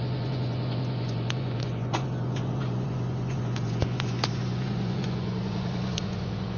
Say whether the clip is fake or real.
fake